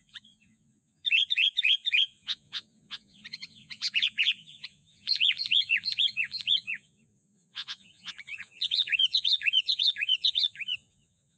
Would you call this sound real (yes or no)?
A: no